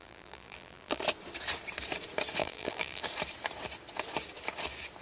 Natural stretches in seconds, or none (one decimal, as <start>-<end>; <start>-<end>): 1.0-2.4; 3.0-5.0